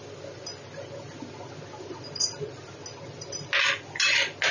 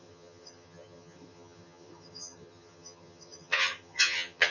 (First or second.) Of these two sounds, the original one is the first